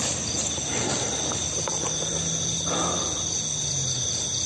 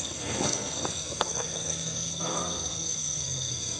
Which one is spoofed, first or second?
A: second